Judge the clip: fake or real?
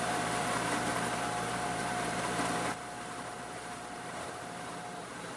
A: fake